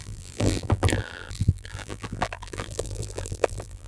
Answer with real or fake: fake